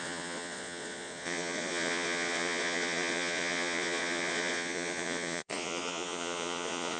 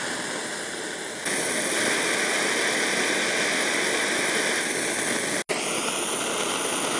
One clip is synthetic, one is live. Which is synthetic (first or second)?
first